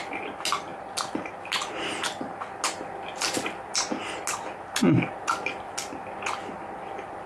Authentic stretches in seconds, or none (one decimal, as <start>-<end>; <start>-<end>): 0.0-7.3